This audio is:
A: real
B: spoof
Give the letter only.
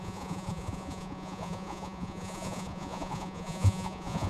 B